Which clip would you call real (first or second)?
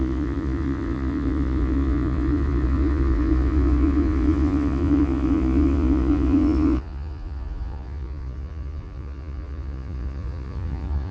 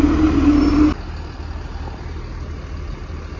second